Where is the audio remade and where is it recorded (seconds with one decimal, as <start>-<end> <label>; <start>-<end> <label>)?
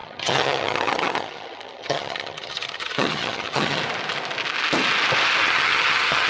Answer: 0.0-3.8 remade; 3.8-5.4 recorded; 5.4-6.3 remade